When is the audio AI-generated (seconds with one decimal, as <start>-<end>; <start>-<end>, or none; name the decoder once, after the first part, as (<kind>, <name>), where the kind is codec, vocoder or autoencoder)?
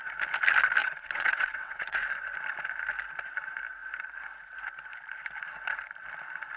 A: 0.8-2.1 (vocoder, WaveNeXt)